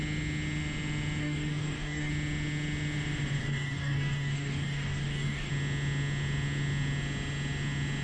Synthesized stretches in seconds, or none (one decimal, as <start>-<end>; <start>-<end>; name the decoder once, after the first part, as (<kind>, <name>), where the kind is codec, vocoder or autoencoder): 1.2-2.1 (codec, DAC); 3.4-5.5